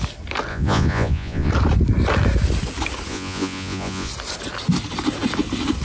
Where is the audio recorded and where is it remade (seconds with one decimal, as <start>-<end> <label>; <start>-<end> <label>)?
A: 0.0-0.5 recorded; 0.5-1.5 remade; 1.5-3.1 recorded; 3.1-4.1 remade; 4.1-5.8 recorded